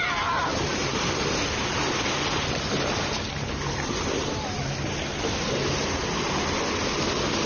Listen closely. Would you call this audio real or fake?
real